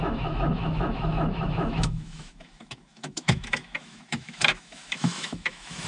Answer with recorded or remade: remade